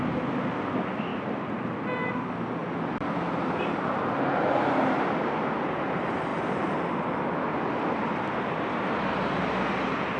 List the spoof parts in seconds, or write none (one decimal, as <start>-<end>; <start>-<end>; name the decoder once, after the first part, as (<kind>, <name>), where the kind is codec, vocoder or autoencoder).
1.1-1.7 (vocoder, BigVGAN v2); 2.6-4.1; 6.3-7.1